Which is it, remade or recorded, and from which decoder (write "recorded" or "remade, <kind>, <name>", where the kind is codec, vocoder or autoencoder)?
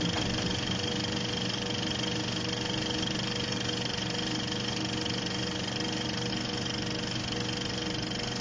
recorded